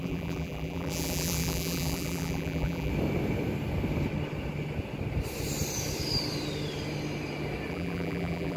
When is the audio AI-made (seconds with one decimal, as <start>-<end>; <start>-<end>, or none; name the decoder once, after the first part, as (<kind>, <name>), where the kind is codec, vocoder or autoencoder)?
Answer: 0.0-2.9 (vocoder, BigVGAN v2); 7.7-8.6